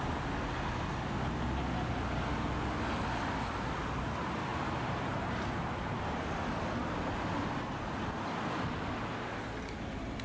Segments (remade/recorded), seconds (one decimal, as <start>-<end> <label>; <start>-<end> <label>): 0.0-4.5 recorded; 4.5-6.3 remade; 6.3-10.2 recorded